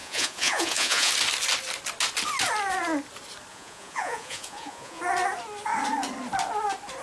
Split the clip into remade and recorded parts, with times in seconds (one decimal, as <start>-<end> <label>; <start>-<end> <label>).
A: 0.0-1.1 remade; 1.1-3.5 recorded; 3.5-5.0 remade; 5.0-7.0 recorded